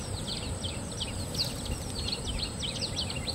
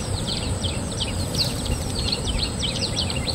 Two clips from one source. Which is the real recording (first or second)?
first